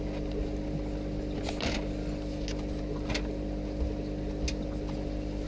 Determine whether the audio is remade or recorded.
recorded